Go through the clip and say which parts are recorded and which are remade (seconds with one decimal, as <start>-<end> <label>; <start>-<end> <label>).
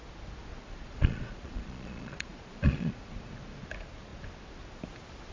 0.0-0.5 recorded; 0.5-3.0 remade; 3.0-5.3 recorded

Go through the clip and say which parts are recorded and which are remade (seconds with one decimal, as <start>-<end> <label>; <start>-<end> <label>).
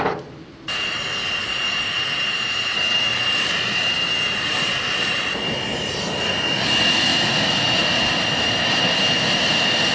0.0-9.9 recorded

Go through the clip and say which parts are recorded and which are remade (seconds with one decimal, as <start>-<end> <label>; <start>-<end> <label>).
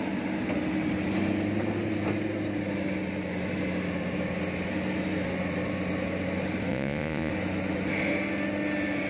0.0-6.7 recorded; 6.7-7.3 remade; 7.3-9.1 recorded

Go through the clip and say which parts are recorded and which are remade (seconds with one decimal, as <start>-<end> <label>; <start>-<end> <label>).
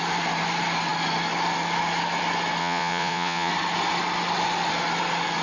0.0-2.6 recorded; 2.6-3.5 remade; 3.5-5.4 recorded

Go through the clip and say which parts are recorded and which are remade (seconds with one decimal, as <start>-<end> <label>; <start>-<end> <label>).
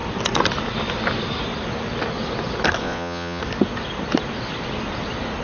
0.0-2.8 recorded; 2.8-3.4 remade; 3.4-5.4 recorded